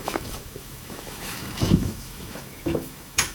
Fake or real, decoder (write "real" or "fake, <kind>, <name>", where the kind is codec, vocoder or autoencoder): fake, autoencoder, DAC-VAE